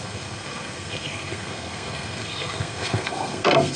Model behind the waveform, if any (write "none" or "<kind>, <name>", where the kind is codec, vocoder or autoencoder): codec, SNAC